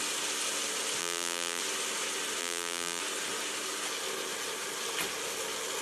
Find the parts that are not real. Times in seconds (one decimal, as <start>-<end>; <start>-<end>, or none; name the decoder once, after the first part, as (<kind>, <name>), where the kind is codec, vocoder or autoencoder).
1.0-1.6 (vocoder, BigVGAN v2); 2.4-3.0